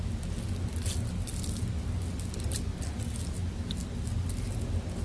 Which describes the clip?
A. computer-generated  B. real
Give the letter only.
B